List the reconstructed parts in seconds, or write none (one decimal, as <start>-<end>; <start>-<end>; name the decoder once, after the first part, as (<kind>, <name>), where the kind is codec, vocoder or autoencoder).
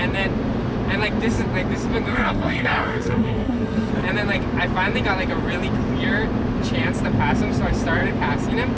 2.1-3.9 (codec, SNAC)